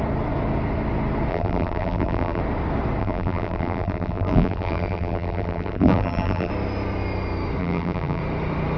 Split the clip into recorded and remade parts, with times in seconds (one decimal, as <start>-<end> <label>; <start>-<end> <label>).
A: 0.0-1.3 recorded; 1.3-2.4 remade; 2.4-3.0 recorded; 3.0-6.5 remade; 6.5-7.6 recorded; 7.6-8.2 remade; 8.2-8.8 recorded